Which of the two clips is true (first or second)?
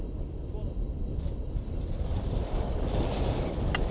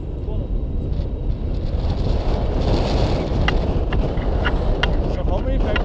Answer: second